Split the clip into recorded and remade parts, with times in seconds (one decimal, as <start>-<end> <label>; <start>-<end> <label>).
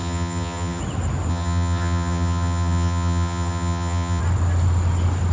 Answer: 0.0-0.8 remade; 0.8-1.3 recorded; 1.3-4.2 remade; 4.2-5.3 recorded